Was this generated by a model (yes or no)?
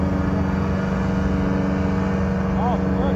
no